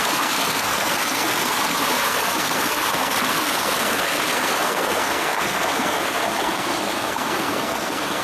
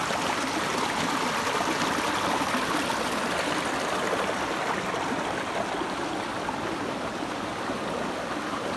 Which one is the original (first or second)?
second